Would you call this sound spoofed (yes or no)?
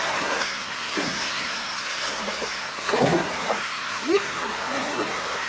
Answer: yes